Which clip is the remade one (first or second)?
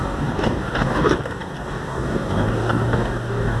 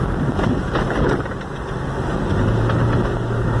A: first